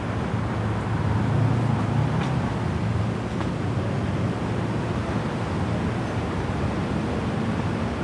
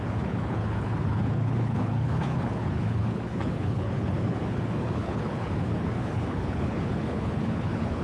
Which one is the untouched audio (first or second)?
first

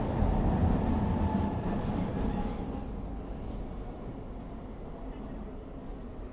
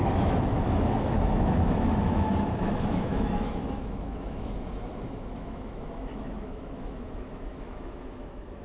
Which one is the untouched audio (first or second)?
first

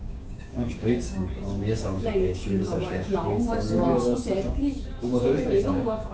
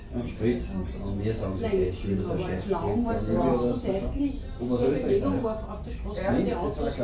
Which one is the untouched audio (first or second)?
second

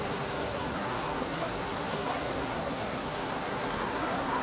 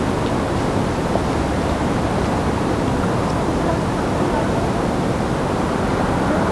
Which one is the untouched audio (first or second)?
second